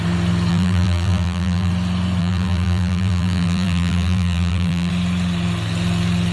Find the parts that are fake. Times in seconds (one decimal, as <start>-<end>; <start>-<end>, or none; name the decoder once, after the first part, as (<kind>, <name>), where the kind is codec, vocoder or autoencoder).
0.5-1.7 (vocoder, BigVGAN v2); 2.2-4.9